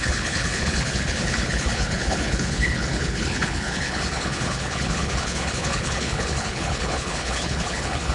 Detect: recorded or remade remade